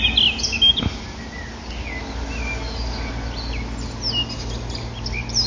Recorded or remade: recorded